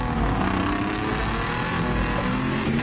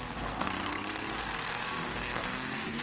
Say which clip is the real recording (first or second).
first